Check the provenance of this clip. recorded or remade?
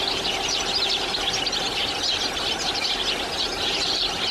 recorded